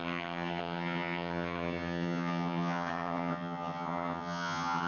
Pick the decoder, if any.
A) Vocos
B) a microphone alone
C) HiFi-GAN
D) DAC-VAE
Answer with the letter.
C